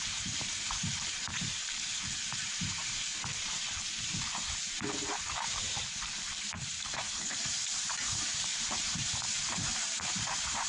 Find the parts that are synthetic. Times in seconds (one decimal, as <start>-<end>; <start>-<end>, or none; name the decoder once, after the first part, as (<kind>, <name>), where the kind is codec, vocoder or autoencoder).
0.0-3.1 (vocoder, BigVGAN v2); 4.0-10.7